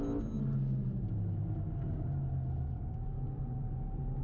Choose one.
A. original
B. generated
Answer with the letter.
A